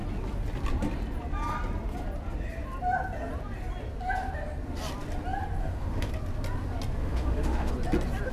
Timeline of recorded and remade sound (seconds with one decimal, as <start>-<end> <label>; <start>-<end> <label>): 0.0-5.6 recorded; 5.6-6.1 remade; 6.1-7.0 recorded; 7.0-7.7 remade; 7.7-8.3 recorded